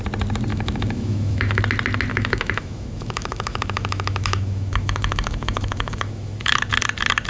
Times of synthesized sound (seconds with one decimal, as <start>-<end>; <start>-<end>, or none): 0.5-1.6; 2.1-6.5